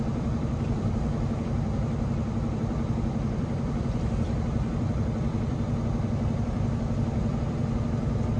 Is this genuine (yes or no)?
no